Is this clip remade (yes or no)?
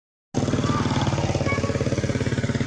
no